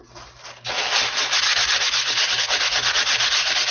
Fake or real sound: real